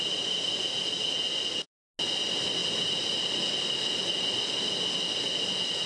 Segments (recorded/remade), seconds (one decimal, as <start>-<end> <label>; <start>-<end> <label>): 0.0-5.9 recorded